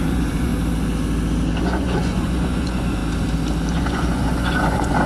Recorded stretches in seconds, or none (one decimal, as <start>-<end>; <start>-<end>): 0.5-1.6; 3.0-3.7